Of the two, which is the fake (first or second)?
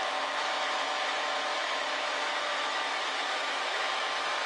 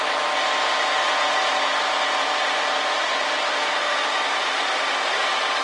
first